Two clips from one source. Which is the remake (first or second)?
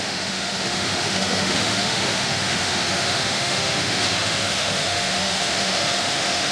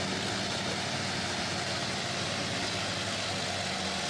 first